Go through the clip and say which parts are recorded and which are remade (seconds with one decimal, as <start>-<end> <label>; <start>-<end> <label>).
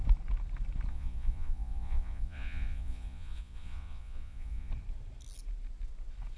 0.0-0.9 recorded; 0.9-4.7 remade; 4.7-6.4 recorded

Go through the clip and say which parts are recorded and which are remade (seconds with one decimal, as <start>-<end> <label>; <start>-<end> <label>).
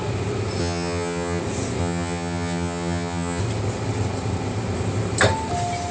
0.0-0.6 recorded; 0.6-1.4 remade; 1.4-1.8 recorded; 1.8-3.4 remade; 3.4-5.9 recorded